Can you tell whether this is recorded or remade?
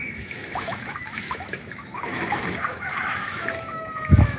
remade